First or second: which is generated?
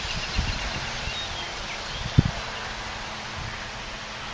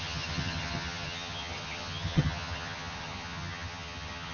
second